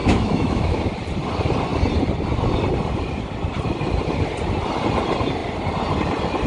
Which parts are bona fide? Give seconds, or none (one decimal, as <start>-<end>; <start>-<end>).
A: 0.8-6.5